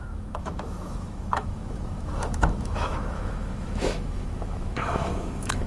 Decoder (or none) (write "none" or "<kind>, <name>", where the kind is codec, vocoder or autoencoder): autoencoder, DAC-VAE